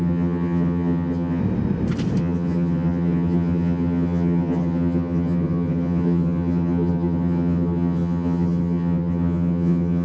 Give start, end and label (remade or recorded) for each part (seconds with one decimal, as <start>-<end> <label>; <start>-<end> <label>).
0.0-1.4 remade; 1.4-2.2 recorded; 2.2-10.0 remade